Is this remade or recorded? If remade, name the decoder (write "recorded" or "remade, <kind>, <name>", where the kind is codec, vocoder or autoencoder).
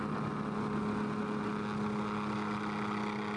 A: recorded